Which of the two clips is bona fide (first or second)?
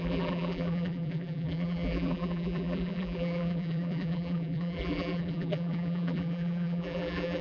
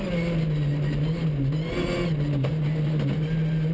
second